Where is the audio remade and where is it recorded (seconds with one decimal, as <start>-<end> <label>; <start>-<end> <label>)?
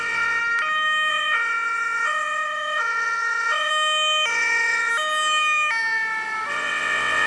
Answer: 0.0-0.4 remade; 0.4-1.1 recorded; 1.1-3.7 remade; 3.7-4.3 recorded; 4.3-4.9 remade; 4.9-6.5 recorded; 6.5-7.3 remade